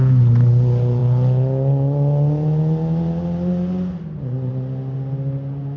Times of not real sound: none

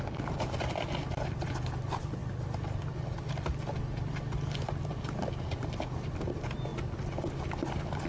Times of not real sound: none

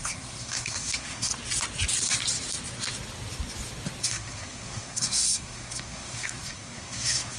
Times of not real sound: 0.0-1.3; 4.0-7.4

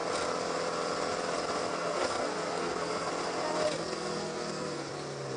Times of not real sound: 1.7-3.1; 3.8-4.9